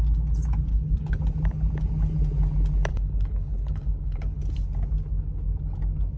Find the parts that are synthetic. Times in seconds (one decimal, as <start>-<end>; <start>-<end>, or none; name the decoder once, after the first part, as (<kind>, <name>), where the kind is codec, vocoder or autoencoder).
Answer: 0.7-1.2 (codec, HILCodec); 2.9-4.4